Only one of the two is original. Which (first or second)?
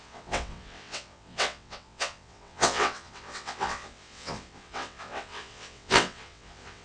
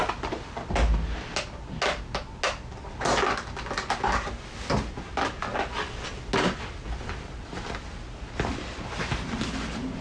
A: second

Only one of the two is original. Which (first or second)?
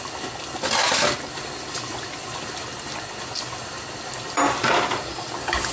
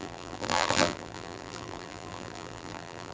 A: first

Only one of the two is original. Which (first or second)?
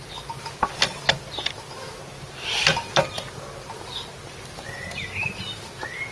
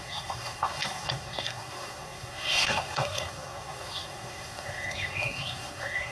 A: first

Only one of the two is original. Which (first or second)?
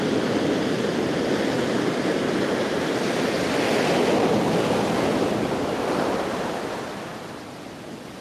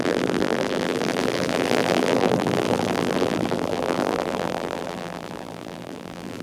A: first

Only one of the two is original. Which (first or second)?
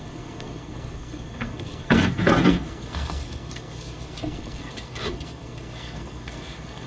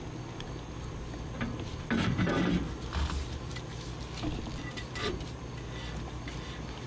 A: second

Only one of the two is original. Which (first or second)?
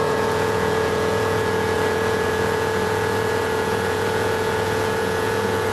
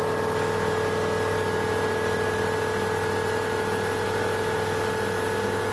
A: second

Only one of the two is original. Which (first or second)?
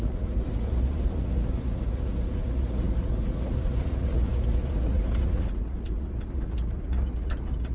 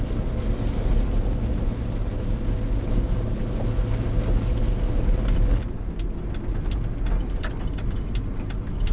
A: second